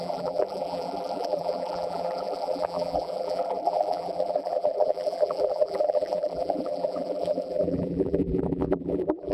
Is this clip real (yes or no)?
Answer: no